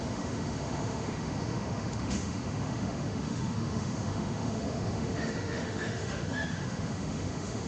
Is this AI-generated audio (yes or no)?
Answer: yes